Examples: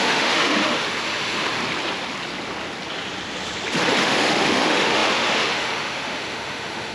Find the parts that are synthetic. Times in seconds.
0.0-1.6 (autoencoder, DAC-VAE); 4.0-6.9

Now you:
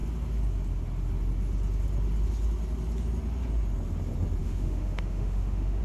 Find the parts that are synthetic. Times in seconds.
4.4-5.8 (autoencoder, DAC-VAE)

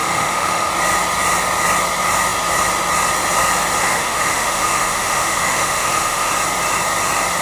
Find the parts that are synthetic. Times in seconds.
0.0-0.7 (autoencoder, DAC-VAE); 3.8-6.3

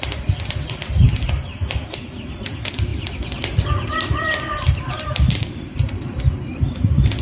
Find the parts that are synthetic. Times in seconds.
none